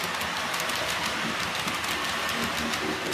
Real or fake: real